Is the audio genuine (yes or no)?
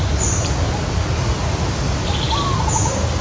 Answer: yes